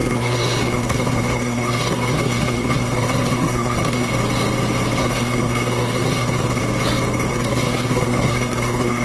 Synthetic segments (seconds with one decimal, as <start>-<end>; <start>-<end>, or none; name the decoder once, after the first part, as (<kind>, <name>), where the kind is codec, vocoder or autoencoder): 0.0-4.1 (codec, SNAC); 5.0-6.6; 7.3-9.0